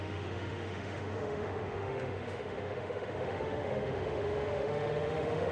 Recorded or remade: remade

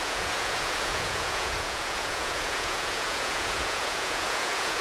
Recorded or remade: remade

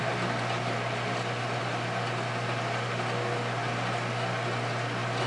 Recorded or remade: recorded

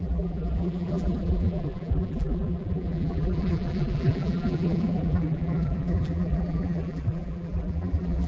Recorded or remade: remade